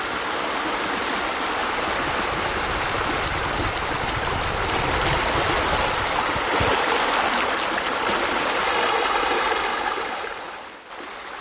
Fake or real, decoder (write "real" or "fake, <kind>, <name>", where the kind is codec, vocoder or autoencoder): real